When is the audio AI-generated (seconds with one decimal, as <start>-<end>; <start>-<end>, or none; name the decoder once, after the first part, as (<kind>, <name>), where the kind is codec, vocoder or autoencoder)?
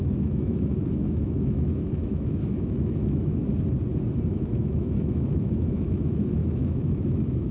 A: 0.0-3.4 (autoencoder, DAC-VAE); 4.3-7.5